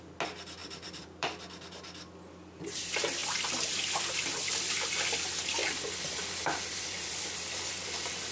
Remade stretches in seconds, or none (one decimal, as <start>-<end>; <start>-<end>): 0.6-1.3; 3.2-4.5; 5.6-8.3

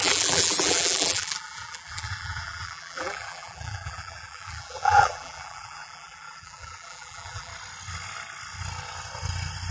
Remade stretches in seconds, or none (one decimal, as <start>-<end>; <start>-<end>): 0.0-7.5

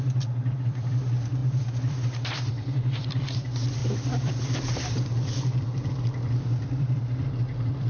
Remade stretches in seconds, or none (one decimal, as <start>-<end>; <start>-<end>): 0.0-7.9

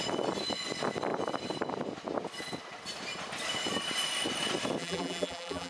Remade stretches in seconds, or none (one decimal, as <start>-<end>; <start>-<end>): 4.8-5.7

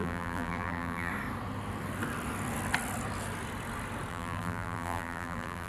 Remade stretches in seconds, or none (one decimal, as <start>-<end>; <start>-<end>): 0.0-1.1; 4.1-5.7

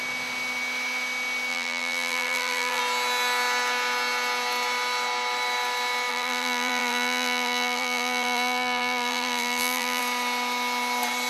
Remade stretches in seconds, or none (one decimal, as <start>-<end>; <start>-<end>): 1.5-2.8; 6.1-10.0